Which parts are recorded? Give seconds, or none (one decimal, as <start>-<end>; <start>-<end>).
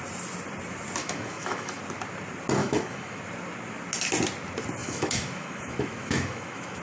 0.0-1.0; 1.8-2.6; 3.2-4.8